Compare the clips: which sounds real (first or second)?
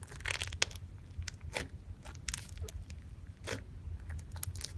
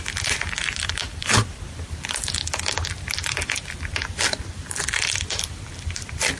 first